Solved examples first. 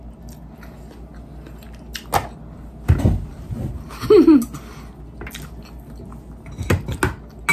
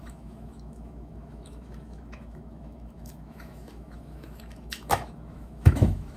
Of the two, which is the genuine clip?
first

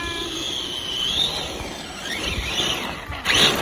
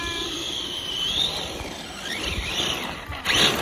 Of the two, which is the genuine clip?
first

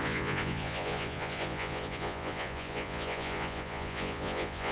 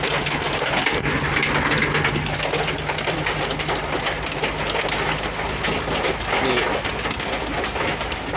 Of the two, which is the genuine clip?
second